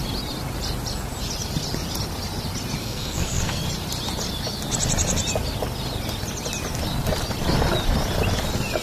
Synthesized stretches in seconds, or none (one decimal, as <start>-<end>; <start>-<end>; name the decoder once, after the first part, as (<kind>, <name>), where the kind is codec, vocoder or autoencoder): 2.8-3.6 (codec, SNAC)